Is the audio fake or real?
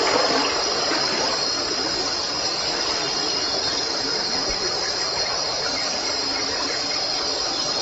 real